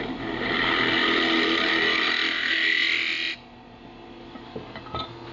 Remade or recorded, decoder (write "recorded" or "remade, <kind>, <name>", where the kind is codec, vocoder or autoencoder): recorded